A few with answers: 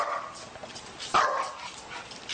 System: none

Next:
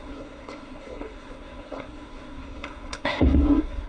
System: codec, SNAC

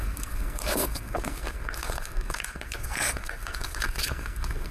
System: codec, SNAC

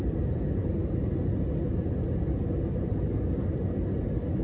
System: none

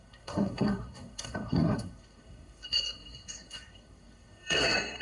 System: codec, SNAC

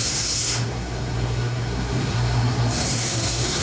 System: codec, SNAC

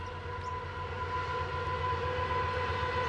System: none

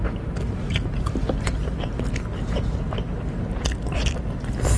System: none